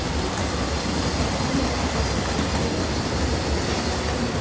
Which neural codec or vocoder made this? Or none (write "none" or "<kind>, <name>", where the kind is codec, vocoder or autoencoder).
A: none